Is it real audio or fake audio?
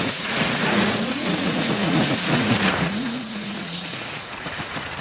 fake